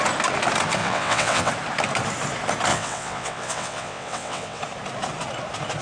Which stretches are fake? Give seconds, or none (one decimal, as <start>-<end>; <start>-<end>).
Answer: 0.8-1.5; 2.7-4.6